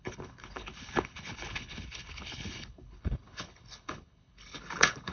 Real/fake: fake